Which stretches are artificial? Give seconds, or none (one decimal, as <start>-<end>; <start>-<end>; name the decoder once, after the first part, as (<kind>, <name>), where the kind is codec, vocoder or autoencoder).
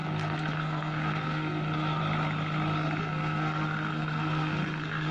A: 0.0-2.0 (codec, SNAC); 3.0-5.1